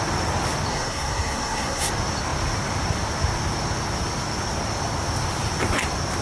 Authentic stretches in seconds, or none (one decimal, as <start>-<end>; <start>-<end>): 0.0-0.7; 1.9-6.2

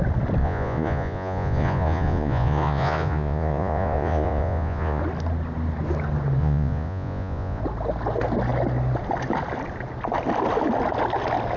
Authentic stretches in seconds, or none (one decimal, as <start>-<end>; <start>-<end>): 0.0-0.4; 5.0-6.4; 7.6-11.6